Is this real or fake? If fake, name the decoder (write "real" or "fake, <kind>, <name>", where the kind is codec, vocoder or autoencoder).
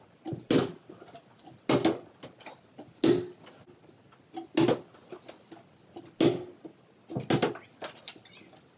real